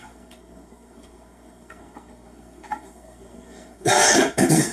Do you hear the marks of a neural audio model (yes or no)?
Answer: yes